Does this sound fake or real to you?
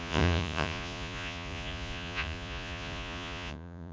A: fake